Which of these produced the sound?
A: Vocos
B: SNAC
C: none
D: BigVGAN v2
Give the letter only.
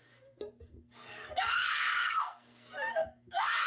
B